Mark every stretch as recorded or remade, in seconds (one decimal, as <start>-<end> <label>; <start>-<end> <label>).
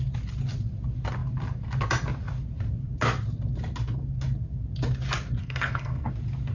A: 0.0-5.4 recorded; 5.4-6.1 remade; 6.1-6.5 recorded